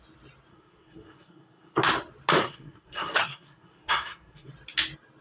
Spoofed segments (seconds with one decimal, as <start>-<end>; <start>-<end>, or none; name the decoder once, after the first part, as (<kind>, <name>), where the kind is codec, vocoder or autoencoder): 0.5-1.8 (codec, SNAC); 2.4-4.5